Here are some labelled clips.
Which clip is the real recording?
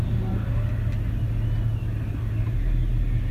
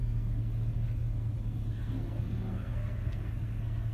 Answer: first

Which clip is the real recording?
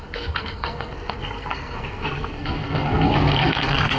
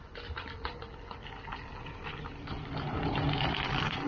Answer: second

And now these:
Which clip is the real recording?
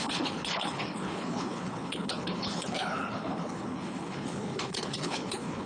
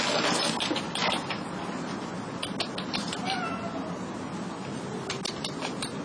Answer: second